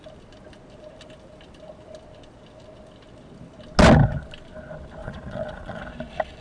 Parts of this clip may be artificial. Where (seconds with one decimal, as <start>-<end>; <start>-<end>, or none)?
5.0-5.8